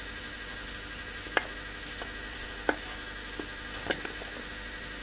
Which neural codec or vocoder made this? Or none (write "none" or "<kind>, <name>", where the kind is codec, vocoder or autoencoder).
none